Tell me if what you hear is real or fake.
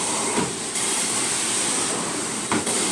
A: fake